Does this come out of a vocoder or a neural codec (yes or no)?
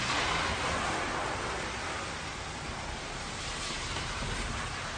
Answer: no